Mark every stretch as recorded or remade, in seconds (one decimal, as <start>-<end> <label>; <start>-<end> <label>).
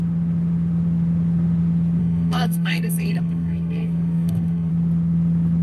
0.0-2.0 recorded; 2.0-4.7 remade; 4.7-5.6 recorded